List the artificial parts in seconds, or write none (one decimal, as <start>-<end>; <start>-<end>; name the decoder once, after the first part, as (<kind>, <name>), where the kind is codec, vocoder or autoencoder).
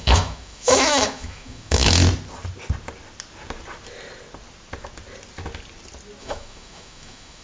0.0-2.0 (autoencoder, DAC-VAE); 6.2-7.4